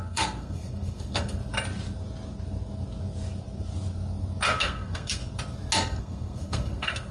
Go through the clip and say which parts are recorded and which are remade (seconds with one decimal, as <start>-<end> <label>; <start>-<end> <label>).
0.0-1.4 remade; 1.4-4.6 recorded; 4.6-5.2 remade; 5.2-6.0 recorded; 6.0-7.1 remade

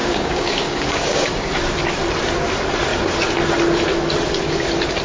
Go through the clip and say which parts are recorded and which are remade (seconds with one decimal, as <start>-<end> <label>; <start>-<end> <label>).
0.0-1.5 remade; 1.5-5.0 recorded

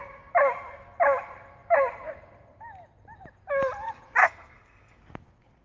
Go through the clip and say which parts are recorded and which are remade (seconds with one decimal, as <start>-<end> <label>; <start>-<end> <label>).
0.0-4.2 recorded; 4.2-5.0 remade; 5.0-5.6 recorded

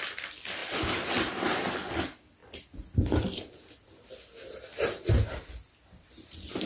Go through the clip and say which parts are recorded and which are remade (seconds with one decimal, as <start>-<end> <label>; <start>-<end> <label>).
0.0-6.7 recorded

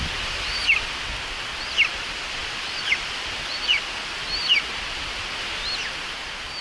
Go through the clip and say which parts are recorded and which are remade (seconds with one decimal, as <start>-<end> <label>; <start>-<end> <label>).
0.0-6.6 recorded

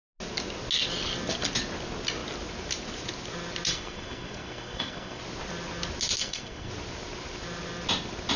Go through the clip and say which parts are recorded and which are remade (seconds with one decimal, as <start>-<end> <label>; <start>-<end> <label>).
0.0-3.7 recorded; 3.7-5.2 remade; 5.2-6.2 recorded; 6.2-6.7 remade; 6.7-8.4 recorded